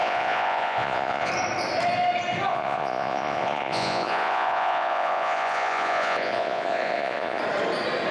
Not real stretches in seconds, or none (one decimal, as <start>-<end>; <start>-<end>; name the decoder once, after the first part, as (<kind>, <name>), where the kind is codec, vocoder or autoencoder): 0.0-1.3 (vocoder, Vocos); 2.5-7.4